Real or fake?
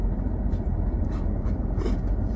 fake